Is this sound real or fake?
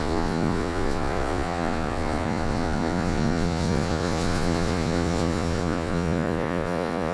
fake